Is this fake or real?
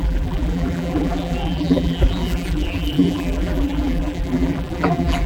fake